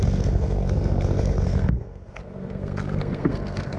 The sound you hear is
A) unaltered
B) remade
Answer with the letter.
B